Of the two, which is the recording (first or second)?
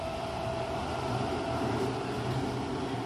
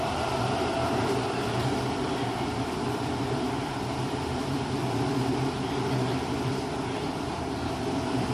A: first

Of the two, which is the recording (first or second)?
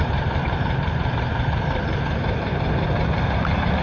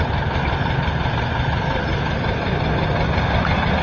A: second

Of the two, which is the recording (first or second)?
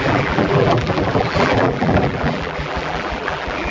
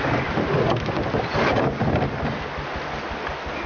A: second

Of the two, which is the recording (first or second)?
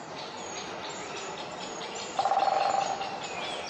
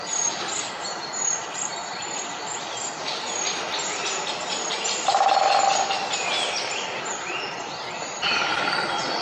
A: first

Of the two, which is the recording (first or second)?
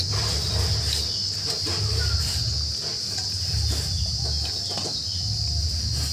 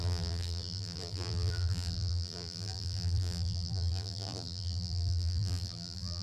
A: first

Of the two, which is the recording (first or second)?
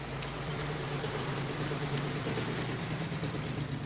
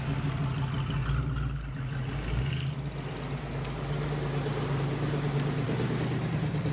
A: second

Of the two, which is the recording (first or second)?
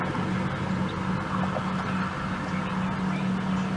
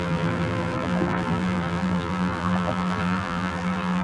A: first